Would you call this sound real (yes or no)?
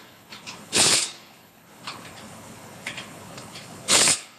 no